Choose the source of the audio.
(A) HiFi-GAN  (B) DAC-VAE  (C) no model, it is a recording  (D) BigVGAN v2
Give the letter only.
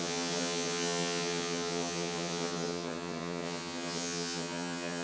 A